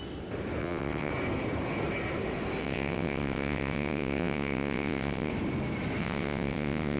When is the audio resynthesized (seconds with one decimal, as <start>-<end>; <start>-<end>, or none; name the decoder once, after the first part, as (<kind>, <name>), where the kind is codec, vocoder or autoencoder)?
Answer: 0.6-1.1 (vocoder, WaveNeXt); 2.6-5.3; 6.0-7.0